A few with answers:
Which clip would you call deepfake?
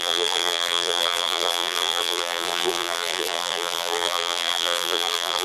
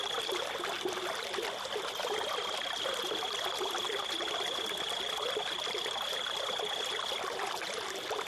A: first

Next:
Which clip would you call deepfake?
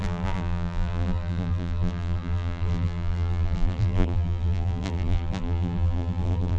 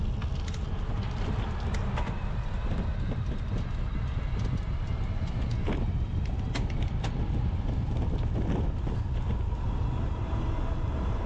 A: first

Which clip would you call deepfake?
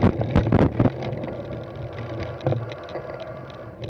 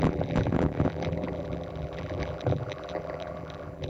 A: second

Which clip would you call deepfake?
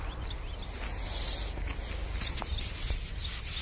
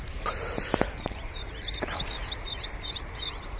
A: second